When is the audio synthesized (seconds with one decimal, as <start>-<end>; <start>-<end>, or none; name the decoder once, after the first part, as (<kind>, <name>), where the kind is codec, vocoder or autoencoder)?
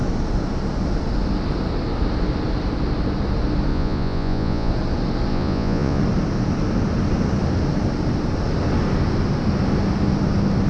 3.7-4.7 (vocoder, Vocos); 5.3-6.0